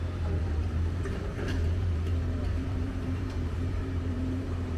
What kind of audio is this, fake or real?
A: fake